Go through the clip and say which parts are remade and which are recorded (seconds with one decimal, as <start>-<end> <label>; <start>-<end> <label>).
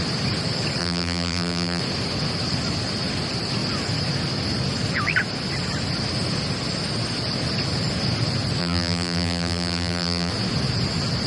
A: 0.0-0.8 recorded; 0.8-1.8 remade; 1.8-8.6 recorded; 8.6-10.3 remade; 10.3-11.3 recorded